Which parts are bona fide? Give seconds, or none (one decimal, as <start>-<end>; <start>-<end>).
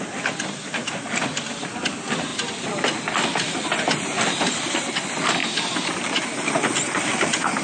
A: 0.0-7.6